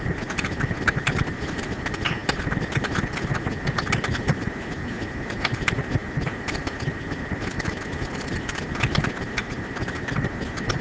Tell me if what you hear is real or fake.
real